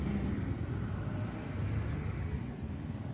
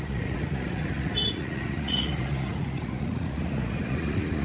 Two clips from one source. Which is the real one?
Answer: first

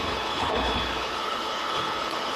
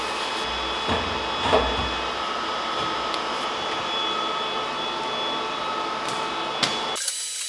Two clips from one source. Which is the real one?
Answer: second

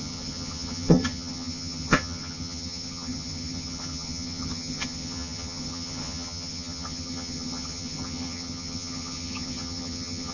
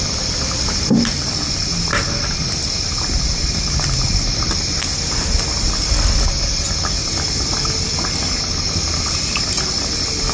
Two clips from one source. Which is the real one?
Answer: second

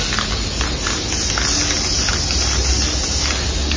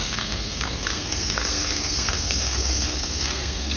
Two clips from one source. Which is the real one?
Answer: first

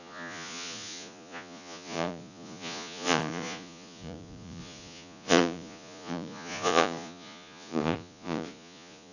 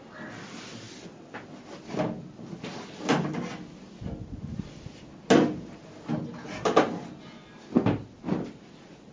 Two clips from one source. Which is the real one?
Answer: second